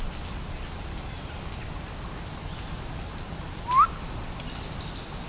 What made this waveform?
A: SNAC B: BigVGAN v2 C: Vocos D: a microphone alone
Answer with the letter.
D